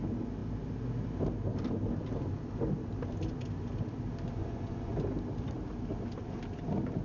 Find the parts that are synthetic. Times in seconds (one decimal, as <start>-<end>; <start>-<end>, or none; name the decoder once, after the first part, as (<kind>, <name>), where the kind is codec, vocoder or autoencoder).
4.4-5.0 (vocoder, Vocos)